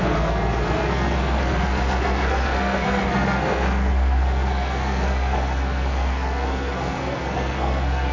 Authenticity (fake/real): fake